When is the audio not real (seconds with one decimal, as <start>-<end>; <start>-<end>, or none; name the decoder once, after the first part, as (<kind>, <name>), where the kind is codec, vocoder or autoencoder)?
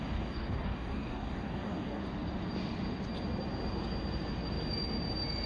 0.0-2.0 (codec, DAC)